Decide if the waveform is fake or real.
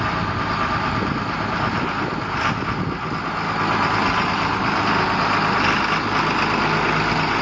real